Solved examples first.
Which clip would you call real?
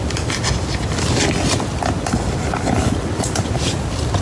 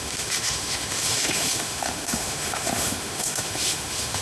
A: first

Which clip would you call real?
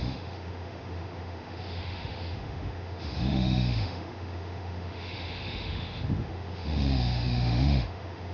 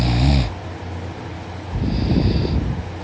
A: second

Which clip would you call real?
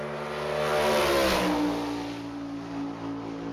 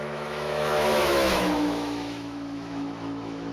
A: first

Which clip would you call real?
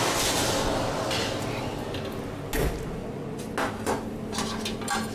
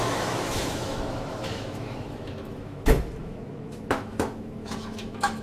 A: first